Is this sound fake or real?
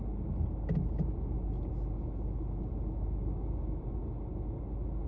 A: real